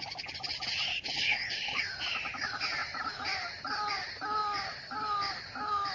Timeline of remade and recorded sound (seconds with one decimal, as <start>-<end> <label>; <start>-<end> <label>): 0.0-0.9 recorded; 0.9-1.8 remade; 1.8-5.9 recorded